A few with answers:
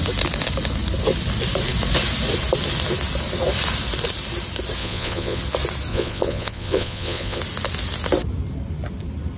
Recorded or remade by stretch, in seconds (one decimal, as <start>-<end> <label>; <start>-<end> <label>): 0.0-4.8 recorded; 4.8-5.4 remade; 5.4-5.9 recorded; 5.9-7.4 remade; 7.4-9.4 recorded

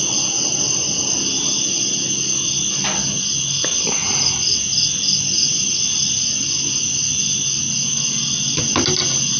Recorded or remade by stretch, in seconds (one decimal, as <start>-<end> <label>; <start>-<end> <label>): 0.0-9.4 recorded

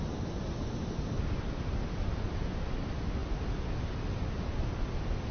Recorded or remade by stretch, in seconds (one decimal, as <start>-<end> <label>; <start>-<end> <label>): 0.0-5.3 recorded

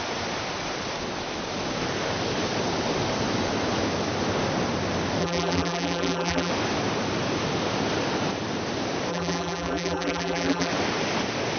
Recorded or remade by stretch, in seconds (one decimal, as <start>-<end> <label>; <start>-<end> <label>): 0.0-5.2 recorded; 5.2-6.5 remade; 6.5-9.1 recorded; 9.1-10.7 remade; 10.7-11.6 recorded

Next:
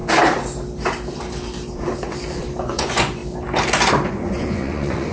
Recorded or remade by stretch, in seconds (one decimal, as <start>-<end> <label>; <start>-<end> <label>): 0.0-2.6 recorded; 2.6-3.2 remade; 3.2-4.1 recorded; 4.1-5.1 remade

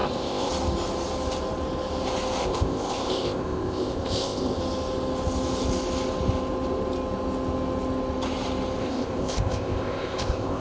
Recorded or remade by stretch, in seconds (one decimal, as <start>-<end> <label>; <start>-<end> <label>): 0.0-0.5 remade; 0.5-2.4 recorded; 2.4-4.6 remade; 4.6-8.8 recorded; 8.8-10.6 remade

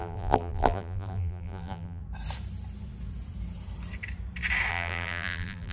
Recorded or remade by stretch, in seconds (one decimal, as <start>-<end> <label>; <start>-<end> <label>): 0.0-2.0 remade; 2.0-4.7 recorded; 4.7-5.7 remade

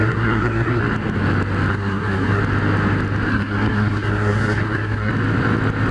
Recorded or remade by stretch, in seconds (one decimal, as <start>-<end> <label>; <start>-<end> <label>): 0.0-0.8 remade; 0.8-1.7 recorded; 1.7-2.4 remade; 2.4-3.3 recorded; 3.3-5.1 remade; 5.1-5.9 recorded